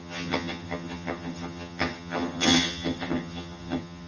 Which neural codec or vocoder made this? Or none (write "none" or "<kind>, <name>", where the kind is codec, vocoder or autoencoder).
vocoder, HiFi-GAN